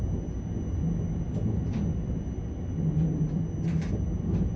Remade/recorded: recorded